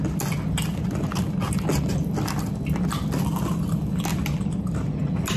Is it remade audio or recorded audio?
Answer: recorded